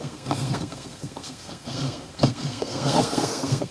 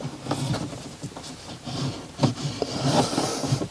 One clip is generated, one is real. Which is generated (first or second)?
first